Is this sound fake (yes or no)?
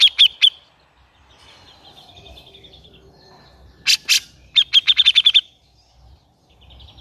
no